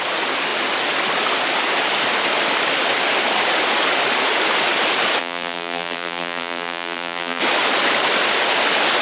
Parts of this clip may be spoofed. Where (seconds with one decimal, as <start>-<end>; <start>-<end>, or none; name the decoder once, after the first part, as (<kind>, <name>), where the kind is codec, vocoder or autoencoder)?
5.2-7.4 (vocoder, BigVGAN v2)